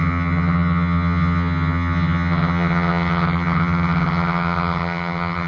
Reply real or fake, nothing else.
fake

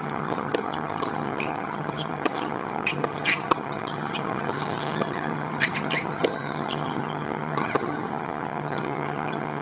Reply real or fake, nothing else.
fake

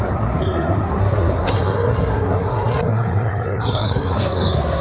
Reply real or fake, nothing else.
fake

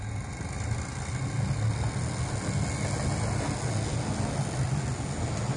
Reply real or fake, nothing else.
real